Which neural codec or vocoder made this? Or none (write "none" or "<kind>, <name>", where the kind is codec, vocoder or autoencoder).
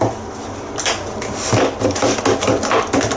none